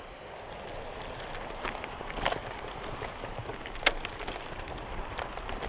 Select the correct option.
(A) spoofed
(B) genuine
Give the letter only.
B